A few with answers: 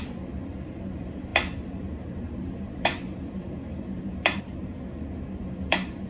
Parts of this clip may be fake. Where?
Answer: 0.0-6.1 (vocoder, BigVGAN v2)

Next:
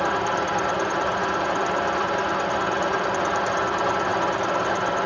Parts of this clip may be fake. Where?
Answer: none

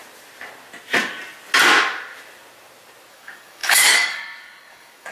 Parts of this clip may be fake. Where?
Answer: 3.1-5.1 (codec, DAC)

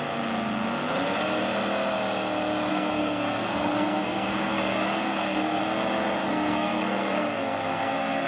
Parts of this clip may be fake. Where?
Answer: 2.7-5.6 (codec, SNAC); 6.2-8.3

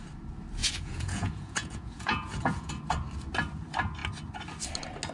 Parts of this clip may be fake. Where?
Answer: 0.6-2.7 (vocoder, Vocos)

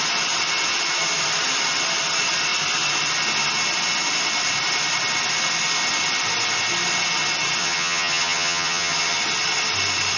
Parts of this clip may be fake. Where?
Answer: 7.6-9.2 (vocoder, HiFi-GAN)